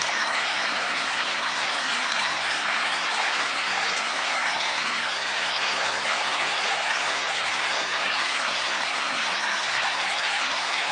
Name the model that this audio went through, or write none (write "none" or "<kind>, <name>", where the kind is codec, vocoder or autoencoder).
codec, SNAC